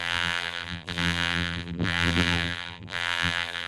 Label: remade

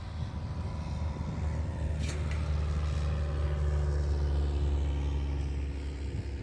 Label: recorded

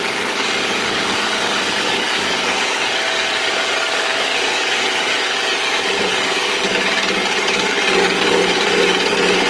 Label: remade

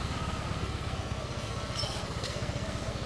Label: remade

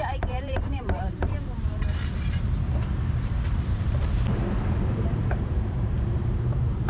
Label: remade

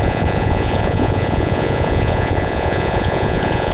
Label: remade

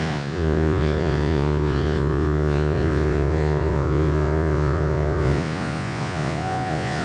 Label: remade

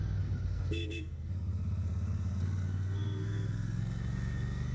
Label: remade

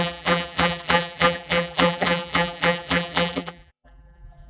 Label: remade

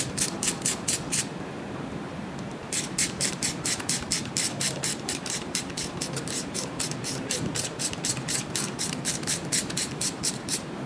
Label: remade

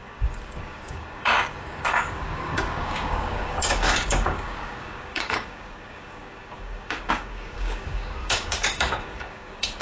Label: remade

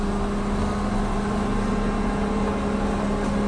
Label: recorded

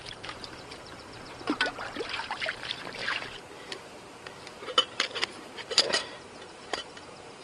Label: remade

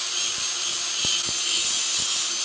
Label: recorded